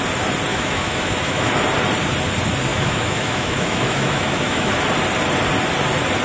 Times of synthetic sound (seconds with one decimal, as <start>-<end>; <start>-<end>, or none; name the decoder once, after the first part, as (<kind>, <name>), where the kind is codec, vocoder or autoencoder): 0.5-1.5 (autoencoder, DAC-VAE); 2.7-4.7